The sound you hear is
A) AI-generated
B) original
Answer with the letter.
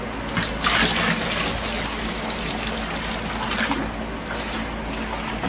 B